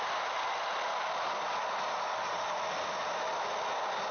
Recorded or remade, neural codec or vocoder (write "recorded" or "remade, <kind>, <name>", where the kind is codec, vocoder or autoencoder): recorded